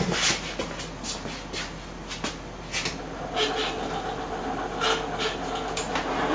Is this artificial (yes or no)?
no